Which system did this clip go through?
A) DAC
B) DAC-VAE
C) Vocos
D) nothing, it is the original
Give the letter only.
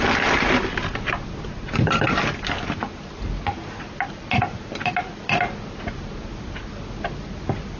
D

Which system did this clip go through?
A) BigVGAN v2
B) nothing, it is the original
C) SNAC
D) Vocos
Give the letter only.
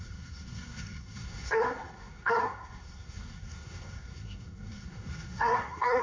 C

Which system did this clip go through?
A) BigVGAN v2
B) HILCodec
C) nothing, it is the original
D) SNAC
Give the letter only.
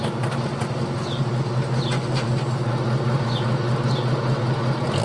C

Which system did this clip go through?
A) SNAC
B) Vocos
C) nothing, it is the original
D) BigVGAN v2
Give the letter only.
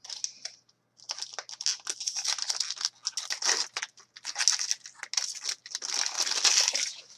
C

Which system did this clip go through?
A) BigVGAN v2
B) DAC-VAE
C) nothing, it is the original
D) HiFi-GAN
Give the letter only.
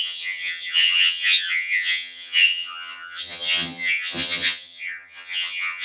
D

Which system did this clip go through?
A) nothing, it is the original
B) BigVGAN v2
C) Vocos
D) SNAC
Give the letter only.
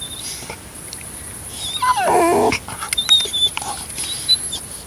A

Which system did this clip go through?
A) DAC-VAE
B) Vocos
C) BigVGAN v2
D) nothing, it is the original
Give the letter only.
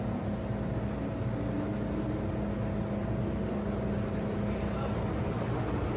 D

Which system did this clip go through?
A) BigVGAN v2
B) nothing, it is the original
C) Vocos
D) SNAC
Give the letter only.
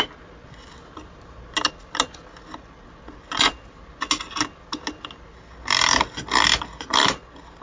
B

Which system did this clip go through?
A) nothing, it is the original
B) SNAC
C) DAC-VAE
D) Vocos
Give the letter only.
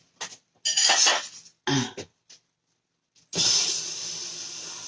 A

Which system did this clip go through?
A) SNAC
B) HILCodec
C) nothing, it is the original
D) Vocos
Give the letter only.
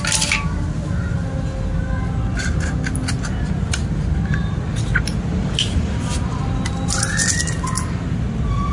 C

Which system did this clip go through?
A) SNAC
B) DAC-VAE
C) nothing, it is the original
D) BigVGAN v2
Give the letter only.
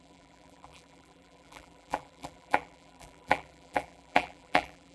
D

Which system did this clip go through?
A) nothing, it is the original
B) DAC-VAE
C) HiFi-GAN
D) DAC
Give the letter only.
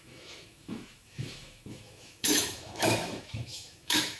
B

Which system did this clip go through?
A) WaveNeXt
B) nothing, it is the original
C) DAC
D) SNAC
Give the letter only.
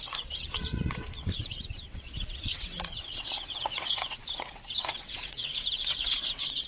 A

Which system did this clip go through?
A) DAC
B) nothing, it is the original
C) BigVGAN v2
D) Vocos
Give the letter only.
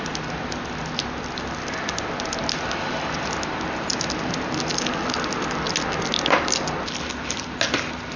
B